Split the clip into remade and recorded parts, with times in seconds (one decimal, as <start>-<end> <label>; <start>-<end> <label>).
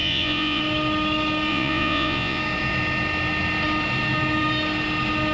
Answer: 0.0-0.6 remade; 0.6-1.5 recorded; 1.5-2.4 remade; 2.4-5.3 recorded